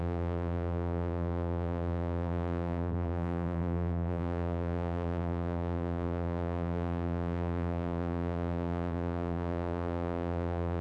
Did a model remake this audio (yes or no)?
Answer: yes